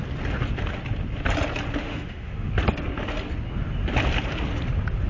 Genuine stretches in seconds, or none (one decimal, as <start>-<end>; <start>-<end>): 0.0-1.8; 2.5-5.1